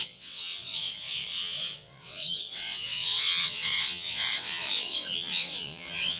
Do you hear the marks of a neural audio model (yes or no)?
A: yes